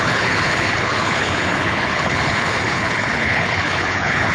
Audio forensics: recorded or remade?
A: remade